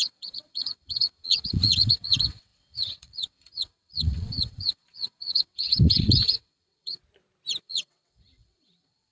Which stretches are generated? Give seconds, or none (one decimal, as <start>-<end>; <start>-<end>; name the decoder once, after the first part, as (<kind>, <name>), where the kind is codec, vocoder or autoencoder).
0.0-7.0 (vocoder, WaveNeXt); 7.6-9.1